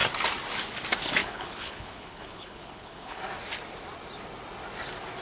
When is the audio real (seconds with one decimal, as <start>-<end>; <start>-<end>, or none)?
0.0-1.2; 3.2-5.2